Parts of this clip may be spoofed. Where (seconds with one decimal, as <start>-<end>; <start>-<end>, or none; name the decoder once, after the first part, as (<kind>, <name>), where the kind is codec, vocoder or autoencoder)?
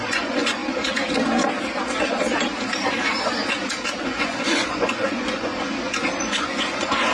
0.0-0.6 (vocoder, Vocos); 4.0-5.5; 6.2-7.1